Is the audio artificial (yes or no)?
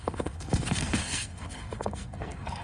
yes